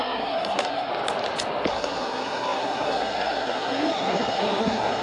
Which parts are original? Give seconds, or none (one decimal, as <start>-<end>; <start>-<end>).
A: 0.9-1.7